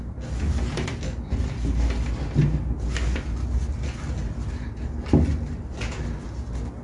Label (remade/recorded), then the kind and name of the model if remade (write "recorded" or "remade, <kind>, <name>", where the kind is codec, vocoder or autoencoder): recorded